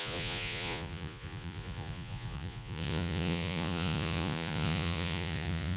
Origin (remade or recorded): remade